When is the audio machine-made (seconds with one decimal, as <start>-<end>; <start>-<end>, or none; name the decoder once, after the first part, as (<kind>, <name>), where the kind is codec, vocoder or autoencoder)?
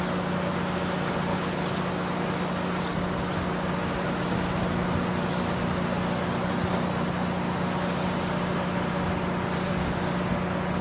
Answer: 1.3-1.8 (codec, HILCodec)